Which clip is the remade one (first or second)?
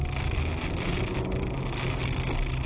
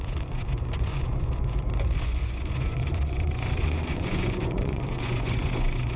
second